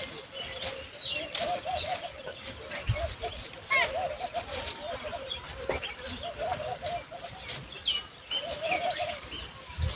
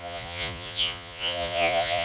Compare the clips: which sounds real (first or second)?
first